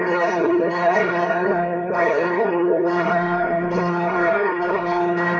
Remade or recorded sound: remade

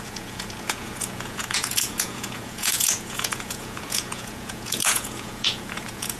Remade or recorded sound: remade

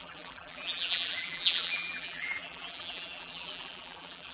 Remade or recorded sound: remade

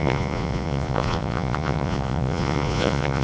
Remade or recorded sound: remade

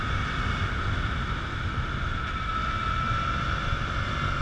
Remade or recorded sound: recorded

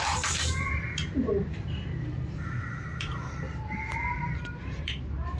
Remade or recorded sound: remade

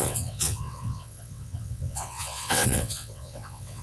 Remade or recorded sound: remade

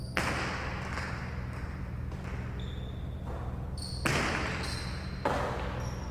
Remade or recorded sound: recorded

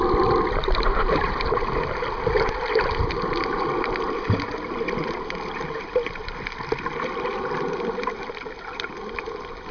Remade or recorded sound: recorded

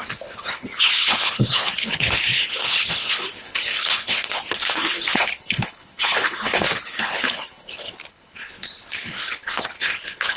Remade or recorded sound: remade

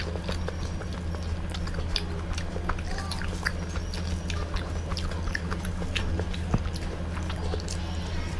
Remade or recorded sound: recorded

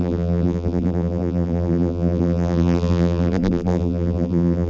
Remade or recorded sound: remade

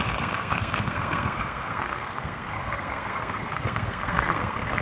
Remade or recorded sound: remade